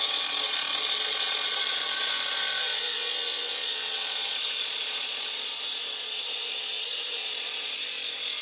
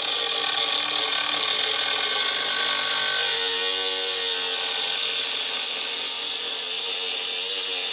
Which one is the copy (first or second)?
first